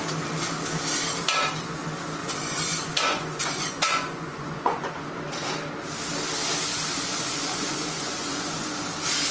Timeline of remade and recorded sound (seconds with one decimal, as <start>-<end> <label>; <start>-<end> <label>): 0.0-2.2 recorded; 2.2-4.9 remade; 4.9-6.7 recorded; 6.7-8.8 remade; 8.8-9.3 recorded